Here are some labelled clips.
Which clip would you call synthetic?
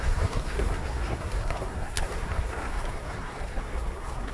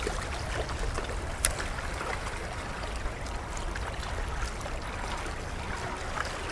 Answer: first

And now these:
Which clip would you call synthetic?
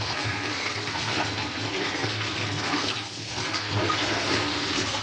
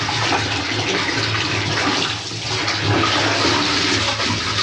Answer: first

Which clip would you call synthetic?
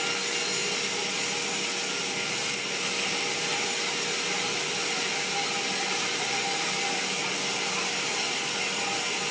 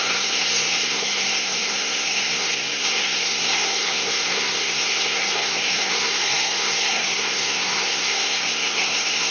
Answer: second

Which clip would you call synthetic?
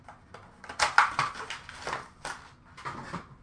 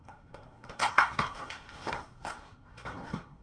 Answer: second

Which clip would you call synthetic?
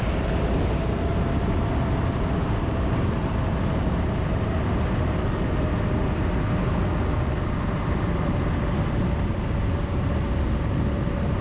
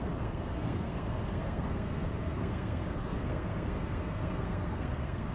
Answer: second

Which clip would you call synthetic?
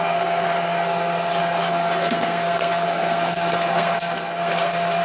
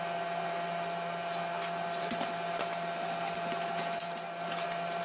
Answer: first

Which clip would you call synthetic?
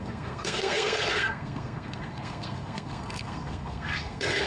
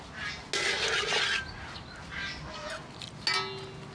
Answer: first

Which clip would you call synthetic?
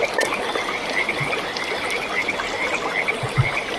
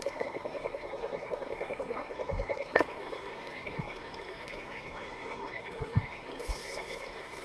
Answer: second